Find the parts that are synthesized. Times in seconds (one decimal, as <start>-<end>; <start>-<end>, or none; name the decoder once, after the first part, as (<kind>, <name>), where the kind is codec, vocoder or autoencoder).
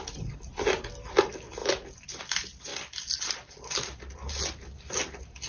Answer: none